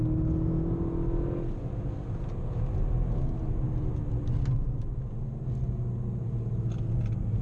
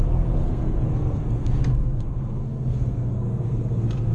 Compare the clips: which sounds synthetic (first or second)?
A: second